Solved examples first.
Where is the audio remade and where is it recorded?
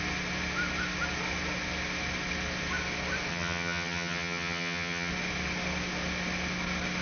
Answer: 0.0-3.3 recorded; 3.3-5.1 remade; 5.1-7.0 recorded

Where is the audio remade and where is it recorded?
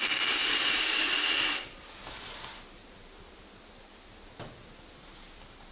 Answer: 0.0-5.7 recorded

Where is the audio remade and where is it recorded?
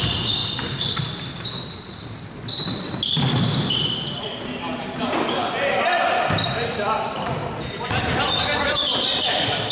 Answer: 0.0-5.4 remade; 5.4-6.4 recorded; 6.4-7.4 remade; 7.4-7.9 recorded; 7.9-9.7 remade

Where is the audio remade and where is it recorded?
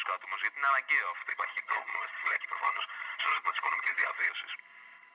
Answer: 0.0-1.2 recorded; 1.2-4.3 remade; 4.3-5.1 recorded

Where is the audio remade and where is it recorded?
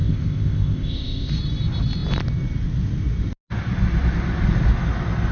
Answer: 0.0-1.3 remade; 1.3-5.3 recorded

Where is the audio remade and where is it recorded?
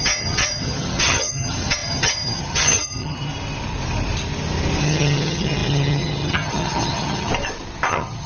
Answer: 0.0-3.3 remade; 3.3-4.8 recorded; 4.8-7.3 remade; 7.3-7.9 recorded; 7.9-8.3 remade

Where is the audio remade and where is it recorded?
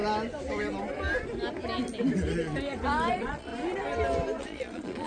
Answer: 0.0-3.1 recorded; 3.1-3.5 remade; 3.5-4.4 recorded; 4.4-5.1 remade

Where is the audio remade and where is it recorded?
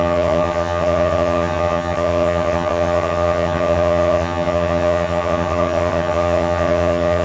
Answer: 0.0-7.2 remade